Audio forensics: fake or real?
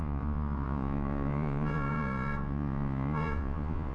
fake